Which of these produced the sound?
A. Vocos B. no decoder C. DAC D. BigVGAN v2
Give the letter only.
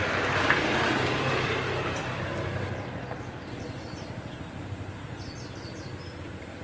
D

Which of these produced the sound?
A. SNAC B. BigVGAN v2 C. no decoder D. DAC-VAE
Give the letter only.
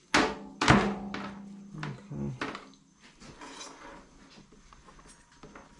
C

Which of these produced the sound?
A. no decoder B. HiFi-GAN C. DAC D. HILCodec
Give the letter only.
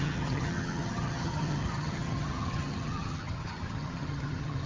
B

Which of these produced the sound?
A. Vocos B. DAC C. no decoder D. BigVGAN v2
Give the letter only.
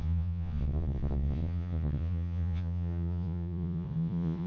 A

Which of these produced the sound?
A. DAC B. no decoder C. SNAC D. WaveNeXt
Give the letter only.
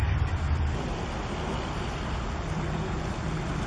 B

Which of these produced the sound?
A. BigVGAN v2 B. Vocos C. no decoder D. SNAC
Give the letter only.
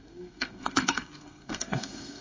D